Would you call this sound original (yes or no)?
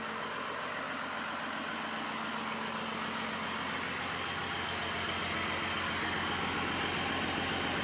yes